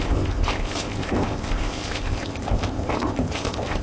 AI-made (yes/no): yes